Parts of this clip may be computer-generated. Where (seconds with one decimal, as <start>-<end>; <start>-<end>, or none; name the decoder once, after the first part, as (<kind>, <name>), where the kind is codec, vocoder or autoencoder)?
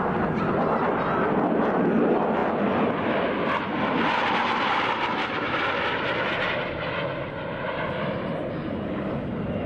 none